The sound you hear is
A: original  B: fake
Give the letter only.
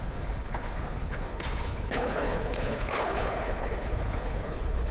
B